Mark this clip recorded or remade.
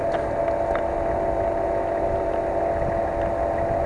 recorded